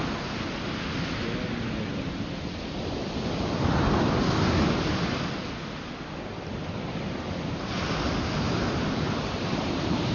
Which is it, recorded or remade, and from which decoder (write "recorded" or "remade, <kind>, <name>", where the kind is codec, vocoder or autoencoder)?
recorded